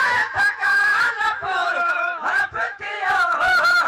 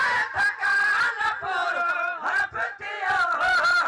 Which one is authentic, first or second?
second